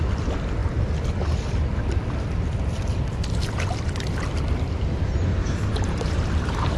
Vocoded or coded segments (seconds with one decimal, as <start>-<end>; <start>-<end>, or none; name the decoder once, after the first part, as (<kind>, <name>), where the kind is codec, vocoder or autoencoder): 5.3-6.8 (vocoder, BigVGAN v2)